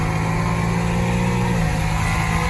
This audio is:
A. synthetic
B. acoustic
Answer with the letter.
B